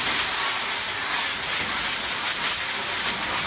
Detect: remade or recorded recorded